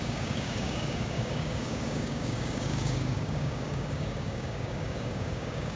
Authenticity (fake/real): fake